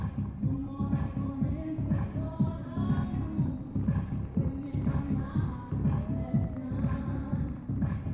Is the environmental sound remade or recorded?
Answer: recorded